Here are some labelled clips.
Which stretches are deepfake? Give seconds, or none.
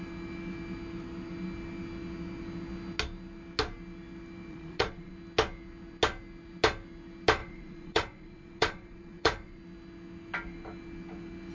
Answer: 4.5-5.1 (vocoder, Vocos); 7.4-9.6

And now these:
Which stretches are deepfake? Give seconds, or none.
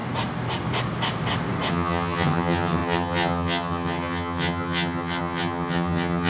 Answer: 1.7-6.3 (vocoder, HiFi-GAN)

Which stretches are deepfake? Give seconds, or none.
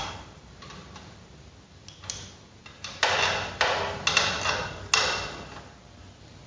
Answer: none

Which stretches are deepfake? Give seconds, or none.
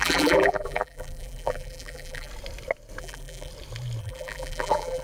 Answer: 0.0-2.3 (vocoder, BigVGAN v2); 3.0-3.5; 4.0-5.0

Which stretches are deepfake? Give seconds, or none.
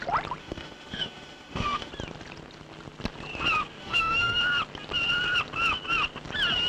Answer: 0.4-1.9 (autoencoder, DAC-VAE); 3.8-4.4